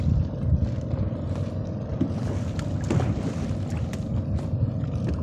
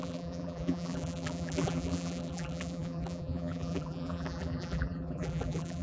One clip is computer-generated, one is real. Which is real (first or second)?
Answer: first